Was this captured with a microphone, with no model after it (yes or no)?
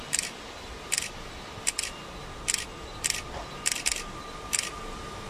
yes